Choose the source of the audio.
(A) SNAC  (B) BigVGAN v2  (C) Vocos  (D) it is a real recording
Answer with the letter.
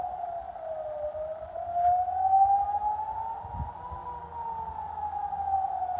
D